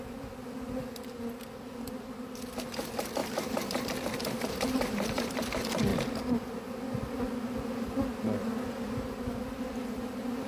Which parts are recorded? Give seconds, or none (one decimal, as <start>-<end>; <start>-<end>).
0.0-3.2; 5.4-5.9; 7.1-10.5